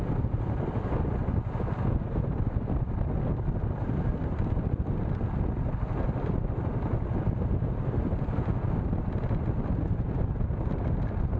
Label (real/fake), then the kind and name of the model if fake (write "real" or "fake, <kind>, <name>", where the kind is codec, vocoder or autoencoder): real